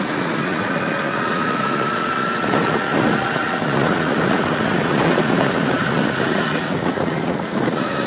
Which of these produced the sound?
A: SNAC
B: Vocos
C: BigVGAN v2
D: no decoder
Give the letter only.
B